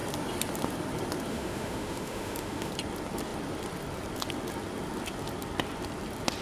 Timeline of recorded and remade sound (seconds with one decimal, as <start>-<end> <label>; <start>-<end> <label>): 0.0-1.3 recorded; 1.3-2.7 remade; 2.7-6.4 recorded